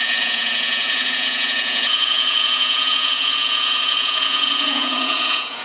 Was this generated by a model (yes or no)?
yes